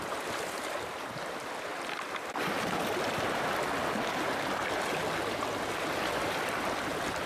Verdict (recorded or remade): recorded